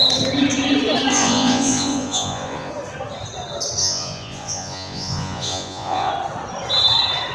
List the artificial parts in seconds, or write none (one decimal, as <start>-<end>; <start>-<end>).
1.1-2.7; 3.8-6.1